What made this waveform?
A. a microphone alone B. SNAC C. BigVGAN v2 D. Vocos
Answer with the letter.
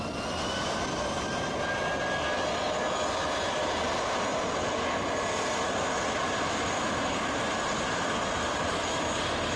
A